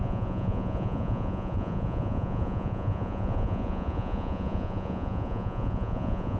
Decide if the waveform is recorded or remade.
remade